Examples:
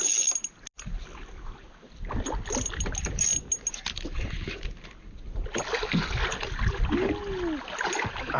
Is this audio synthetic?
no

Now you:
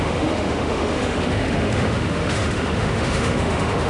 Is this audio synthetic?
yes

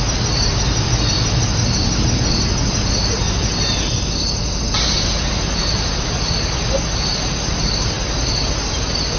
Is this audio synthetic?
no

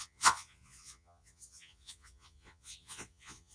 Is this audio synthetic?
yes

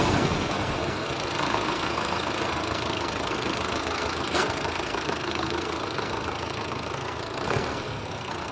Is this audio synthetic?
yes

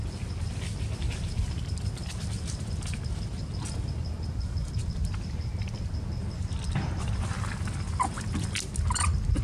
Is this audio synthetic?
no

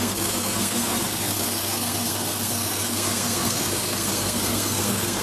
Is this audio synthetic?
yes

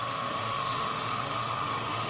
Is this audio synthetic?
yes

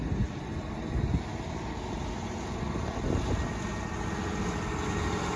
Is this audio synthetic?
no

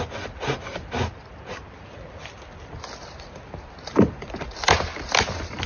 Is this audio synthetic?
no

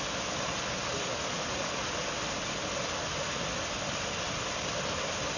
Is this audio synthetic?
no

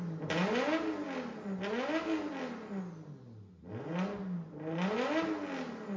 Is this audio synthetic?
no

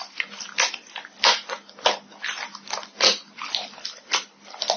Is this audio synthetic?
no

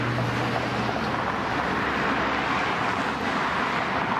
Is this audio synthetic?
no